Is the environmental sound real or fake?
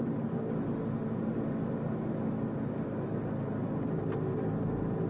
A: real